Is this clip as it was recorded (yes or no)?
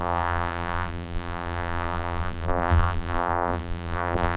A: no